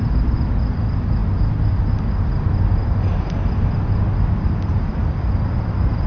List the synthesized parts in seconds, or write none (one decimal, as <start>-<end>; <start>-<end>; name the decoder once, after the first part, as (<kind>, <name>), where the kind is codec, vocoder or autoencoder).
none